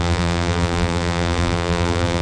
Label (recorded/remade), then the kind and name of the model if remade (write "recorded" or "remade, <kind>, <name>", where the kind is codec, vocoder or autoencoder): remade, vocoder, BigVGAN v2